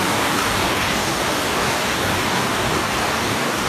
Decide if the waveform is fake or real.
fake